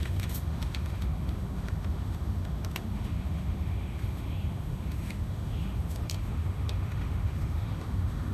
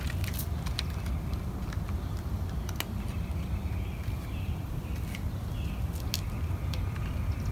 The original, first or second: second